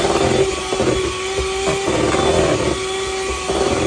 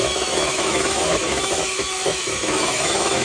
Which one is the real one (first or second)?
first